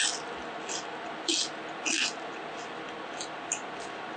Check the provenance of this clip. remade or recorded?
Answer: recorded